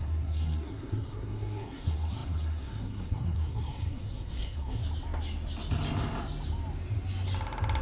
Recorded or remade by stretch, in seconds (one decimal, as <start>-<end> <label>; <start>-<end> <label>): 0.0-4.8 remade; 4.8-7.8 recorded